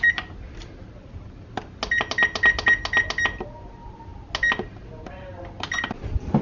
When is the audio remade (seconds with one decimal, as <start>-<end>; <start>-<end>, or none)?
none